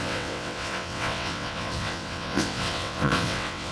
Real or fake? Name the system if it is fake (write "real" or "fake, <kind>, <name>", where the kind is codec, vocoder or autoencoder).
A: fake, vocoder, WaveNeXt